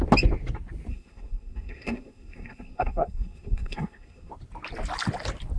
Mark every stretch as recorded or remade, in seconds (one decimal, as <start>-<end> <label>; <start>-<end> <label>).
0.0-0.9 recorded; 0.9-4.3 remade; 4.3-5.6 recorded